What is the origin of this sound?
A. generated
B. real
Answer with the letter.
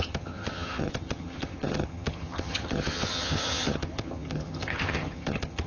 A